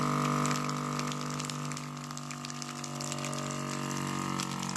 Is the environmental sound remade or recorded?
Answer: recorded